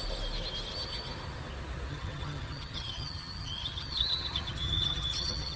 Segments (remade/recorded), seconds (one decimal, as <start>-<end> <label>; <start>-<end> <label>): 0.0-1.9 recorded; 1.9-5.6 remade